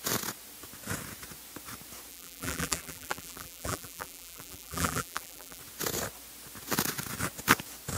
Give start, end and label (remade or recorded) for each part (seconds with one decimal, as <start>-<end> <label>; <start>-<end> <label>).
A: 0.0-2.1 recorded; 2.1-5.6 remade; 5.6-8.0 recorded